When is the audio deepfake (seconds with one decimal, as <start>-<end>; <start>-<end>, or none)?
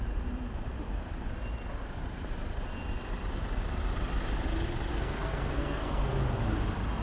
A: 4.9-6.1